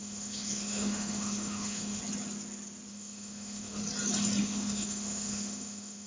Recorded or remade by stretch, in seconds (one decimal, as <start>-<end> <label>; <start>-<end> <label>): 0.0-2.0 remade; 2.0-2.9 recorded; 2.9-3.8 remade; 3.8-4.4 recorded; 4.4-6.1 remade